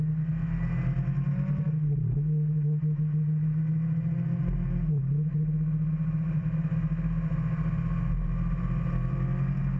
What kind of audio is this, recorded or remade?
recorded